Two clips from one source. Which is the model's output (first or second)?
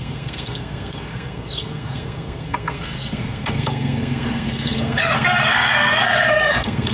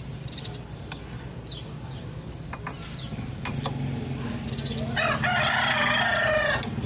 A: first